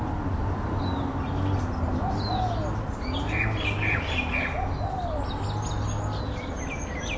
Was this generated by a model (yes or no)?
no